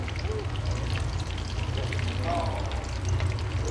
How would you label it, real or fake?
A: real